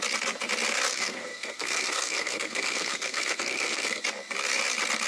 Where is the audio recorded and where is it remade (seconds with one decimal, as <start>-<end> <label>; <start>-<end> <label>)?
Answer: 0.0-0.9 recorded; 0.9-4.0 remade; 4.0-5.1 recorded